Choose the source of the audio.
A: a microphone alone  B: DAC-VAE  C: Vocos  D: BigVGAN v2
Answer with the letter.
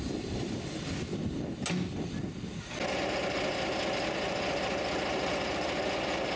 A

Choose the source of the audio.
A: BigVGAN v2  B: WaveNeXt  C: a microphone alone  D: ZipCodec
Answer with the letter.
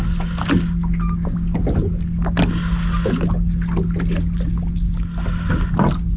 C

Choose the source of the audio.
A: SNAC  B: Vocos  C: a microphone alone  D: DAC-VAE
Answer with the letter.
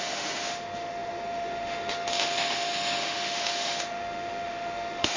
D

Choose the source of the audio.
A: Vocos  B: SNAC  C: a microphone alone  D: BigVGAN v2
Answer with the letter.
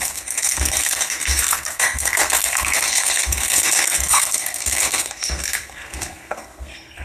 B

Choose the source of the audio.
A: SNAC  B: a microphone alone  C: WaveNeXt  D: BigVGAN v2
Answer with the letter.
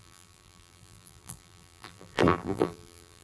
D